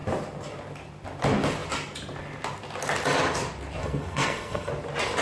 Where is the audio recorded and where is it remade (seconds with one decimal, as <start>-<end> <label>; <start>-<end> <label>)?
0.0-3.8 recorded; 3.8-4.7 remade; 4.7-5.2 recorded